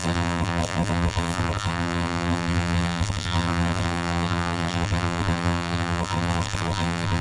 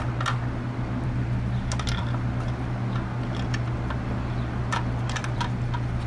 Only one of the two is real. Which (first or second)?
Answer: second